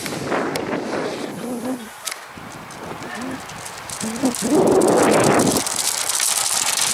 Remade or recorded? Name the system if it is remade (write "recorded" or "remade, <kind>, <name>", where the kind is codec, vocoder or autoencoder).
recorded